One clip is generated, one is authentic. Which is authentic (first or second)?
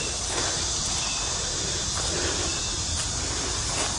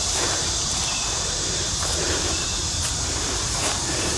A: first